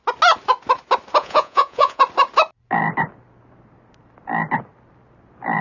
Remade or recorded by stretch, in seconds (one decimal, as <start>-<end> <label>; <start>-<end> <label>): 0.0-1.2 recorded; 1.2-2.0 remade; 2.0-5.6 recorded